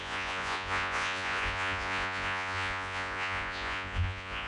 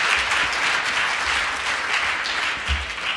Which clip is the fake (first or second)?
first